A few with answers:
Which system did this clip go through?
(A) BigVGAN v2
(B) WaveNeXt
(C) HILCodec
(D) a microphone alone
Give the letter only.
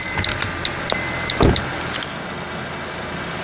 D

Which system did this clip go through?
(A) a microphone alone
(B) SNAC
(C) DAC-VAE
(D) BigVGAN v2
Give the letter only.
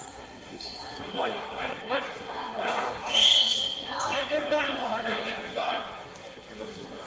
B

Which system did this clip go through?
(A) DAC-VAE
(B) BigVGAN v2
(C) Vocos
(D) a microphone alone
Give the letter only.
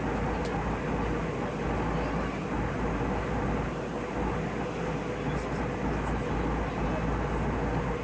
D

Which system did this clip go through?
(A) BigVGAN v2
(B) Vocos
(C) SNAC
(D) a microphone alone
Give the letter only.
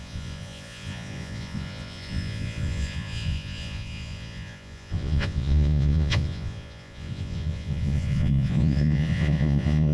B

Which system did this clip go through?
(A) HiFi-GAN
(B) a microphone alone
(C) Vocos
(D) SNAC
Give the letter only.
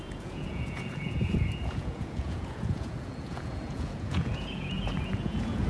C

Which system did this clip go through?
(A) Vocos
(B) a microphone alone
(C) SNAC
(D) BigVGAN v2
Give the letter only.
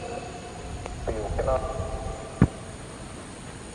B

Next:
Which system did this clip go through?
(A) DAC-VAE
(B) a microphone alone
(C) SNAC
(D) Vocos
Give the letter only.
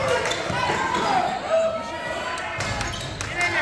B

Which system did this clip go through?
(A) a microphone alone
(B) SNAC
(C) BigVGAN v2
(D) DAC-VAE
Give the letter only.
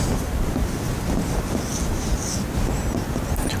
A